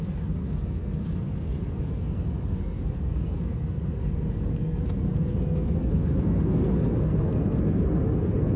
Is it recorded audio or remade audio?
remade